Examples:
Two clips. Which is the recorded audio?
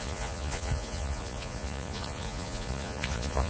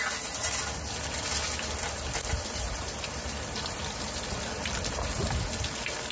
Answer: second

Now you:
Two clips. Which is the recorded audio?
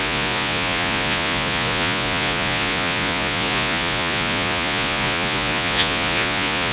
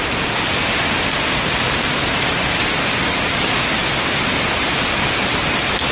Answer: second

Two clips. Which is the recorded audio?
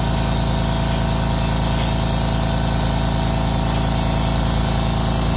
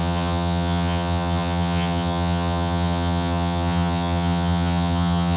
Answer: first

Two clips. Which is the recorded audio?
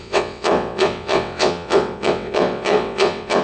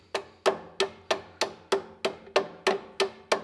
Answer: second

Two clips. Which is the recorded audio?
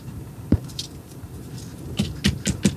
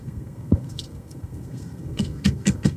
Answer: first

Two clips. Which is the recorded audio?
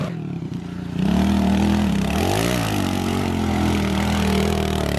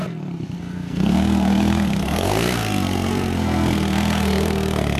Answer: first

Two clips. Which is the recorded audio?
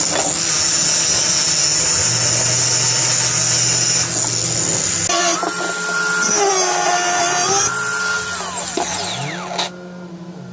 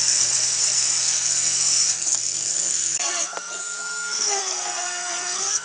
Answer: first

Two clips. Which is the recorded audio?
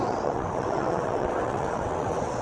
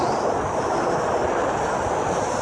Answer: second